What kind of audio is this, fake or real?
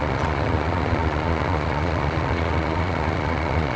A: fake